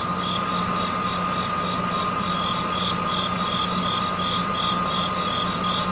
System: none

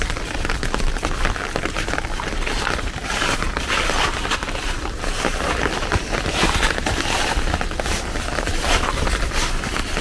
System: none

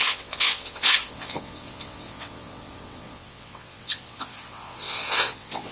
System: vocoder, WaveNeXt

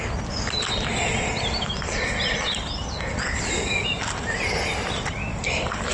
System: none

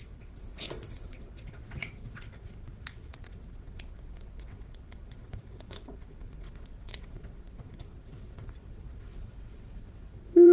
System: vocoder, WaveNeXt